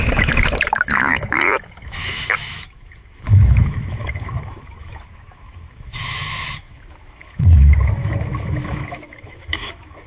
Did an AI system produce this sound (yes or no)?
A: yes